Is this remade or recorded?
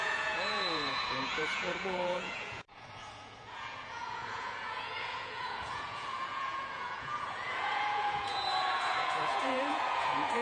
remade